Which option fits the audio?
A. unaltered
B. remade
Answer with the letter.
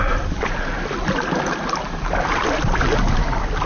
A